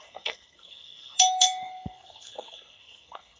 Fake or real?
fake